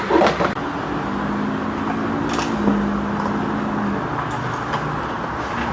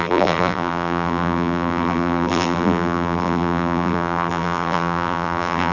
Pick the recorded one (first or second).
first